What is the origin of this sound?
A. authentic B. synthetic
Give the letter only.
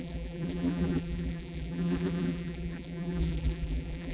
B